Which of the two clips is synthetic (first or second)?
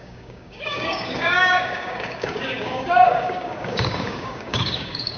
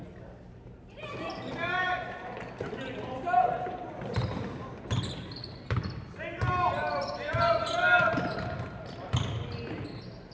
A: first